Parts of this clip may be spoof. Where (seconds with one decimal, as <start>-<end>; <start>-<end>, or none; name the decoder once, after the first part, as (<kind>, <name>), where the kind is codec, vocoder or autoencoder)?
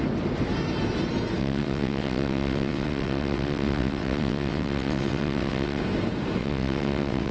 1.4-5.8 (vocoder, WaveNeXt); 6.4-7.3